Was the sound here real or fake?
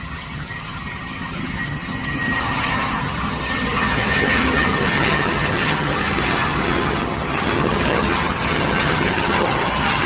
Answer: fake